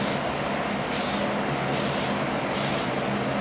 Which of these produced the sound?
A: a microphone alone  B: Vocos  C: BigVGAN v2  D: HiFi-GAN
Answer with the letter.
A